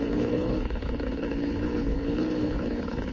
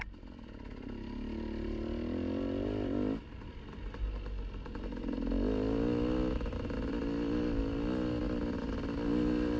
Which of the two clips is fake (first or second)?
first